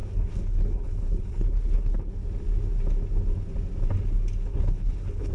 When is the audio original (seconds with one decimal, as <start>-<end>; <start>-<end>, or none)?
2.1-4.5